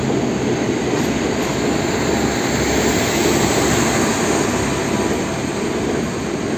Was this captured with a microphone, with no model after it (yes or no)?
yes